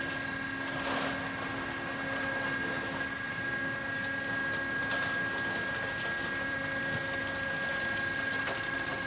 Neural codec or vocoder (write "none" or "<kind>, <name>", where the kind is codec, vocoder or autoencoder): none